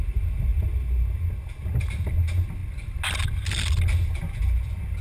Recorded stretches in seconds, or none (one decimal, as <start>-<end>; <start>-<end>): 0.0-5.0